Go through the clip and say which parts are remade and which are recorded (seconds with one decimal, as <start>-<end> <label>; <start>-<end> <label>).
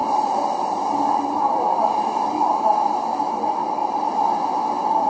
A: 0.0-5.1 recorded